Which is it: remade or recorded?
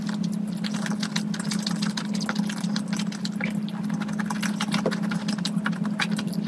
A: recorded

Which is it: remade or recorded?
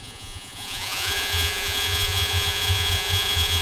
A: remade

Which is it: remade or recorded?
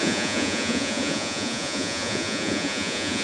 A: remade